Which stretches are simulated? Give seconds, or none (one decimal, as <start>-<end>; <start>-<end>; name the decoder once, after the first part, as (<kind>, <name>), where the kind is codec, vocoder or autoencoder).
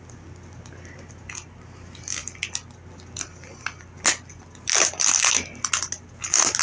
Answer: none